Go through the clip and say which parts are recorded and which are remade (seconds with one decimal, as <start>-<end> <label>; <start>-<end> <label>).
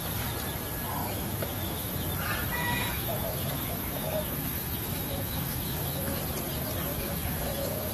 0.0-1.0 recorded; 1.0-1.9 remade; 1.9-2.6 recorded; 2.6-6.2 remade; 6.2-6.9 recorded; 6.9-7.9 remade